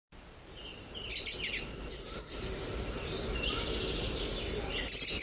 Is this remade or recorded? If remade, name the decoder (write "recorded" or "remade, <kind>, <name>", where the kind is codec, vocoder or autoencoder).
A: recorded